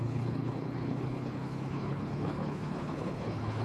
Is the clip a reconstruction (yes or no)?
yes